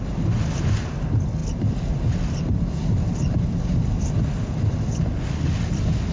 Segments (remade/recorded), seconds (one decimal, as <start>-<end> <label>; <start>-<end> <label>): 0.0-6.1 recorded